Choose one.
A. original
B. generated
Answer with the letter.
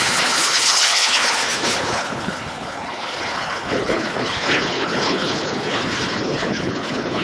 B